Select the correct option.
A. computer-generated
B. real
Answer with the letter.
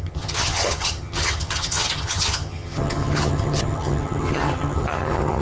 A